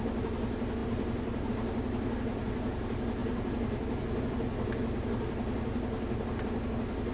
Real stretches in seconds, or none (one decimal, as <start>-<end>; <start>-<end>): 0.0-0.8; 1.5-7.1